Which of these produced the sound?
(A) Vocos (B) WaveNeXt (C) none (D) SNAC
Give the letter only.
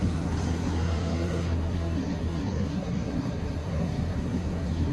D